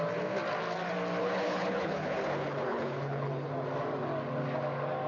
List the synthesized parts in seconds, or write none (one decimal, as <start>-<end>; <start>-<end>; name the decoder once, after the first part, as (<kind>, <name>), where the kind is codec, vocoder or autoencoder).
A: 1.2-3.5 (codec, HILCodec)